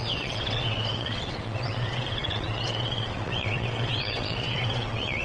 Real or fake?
fake